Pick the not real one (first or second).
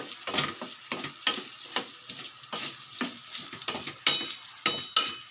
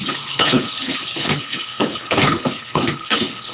second